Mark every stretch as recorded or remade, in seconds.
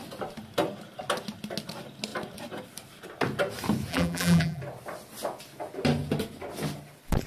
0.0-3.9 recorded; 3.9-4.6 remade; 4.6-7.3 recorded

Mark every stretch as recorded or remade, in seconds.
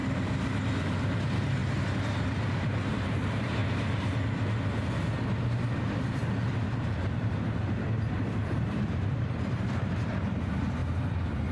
0.0-1.6 remade; 1.6-2.9 recorded; 2.9-3.6 remade; 3.6-7.0 recorded; 7.0-10.8 remade; 10.8-11.5 recorded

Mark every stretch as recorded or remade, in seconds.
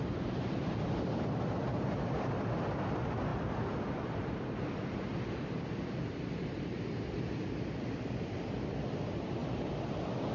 0.0-9.4 remade; 9.4-10.3 recorded